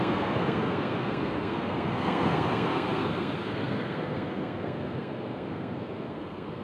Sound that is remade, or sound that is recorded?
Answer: remade